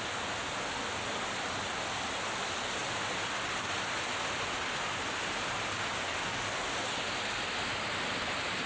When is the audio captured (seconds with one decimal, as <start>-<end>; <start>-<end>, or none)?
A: 0.0-8.7